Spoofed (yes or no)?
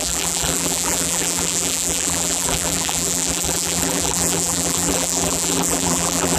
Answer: yes